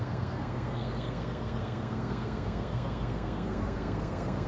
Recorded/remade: remade